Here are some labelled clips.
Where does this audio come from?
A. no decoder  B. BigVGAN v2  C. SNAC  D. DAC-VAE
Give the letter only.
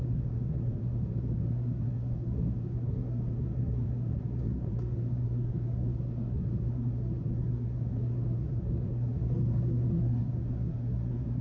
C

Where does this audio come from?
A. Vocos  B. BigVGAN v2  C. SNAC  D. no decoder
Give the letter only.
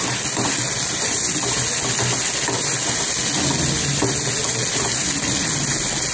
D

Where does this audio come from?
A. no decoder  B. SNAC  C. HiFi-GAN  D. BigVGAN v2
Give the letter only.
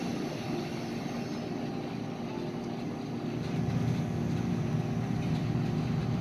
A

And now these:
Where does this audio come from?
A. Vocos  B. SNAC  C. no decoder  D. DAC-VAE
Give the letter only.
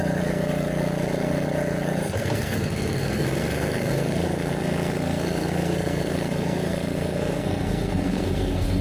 B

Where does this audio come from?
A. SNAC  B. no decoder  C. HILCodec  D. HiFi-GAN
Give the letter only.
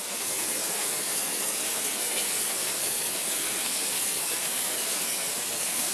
A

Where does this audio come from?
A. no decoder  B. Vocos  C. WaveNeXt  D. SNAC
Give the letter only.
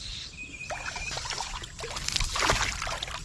A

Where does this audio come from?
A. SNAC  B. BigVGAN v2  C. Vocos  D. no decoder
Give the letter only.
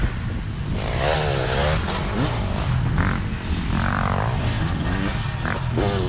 D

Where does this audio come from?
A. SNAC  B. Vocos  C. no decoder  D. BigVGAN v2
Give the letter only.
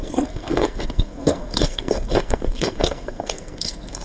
A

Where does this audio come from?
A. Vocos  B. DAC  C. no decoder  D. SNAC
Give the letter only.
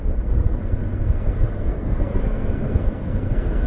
D